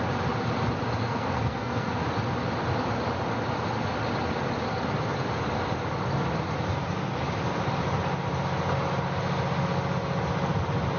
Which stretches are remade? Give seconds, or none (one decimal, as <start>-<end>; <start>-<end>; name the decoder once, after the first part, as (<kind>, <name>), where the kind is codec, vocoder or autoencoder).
1.0-2.0 (codec, SNAC)